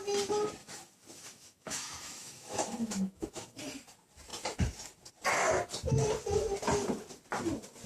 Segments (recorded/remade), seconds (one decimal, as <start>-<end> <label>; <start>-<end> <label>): 0.0-0.6 recorded; 0.6-3.6 remade; 3.6-7.9 recorded